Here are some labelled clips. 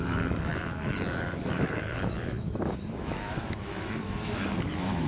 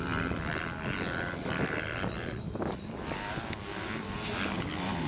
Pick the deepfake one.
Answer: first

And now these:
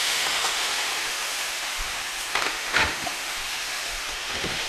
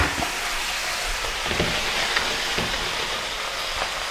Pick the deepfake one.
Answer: first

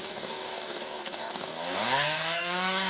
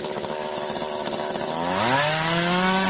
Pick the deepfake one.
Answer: first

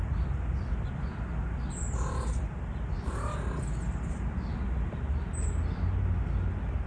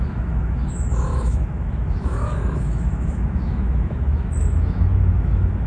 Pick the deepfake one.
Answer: second